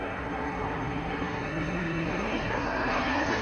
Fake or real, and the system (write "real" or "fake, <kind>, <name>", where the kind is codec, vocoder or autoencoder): fake, codec, SNAC